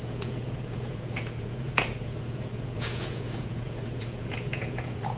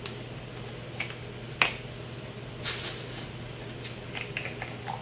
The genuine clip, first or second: second